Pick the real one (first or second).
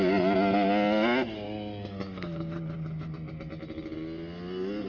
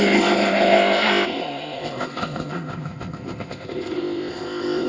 first